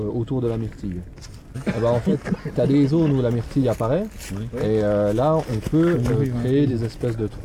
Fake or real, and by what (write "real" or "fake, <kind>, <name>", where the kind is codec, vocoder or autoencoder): real